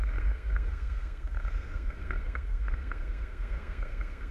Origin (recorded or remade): remade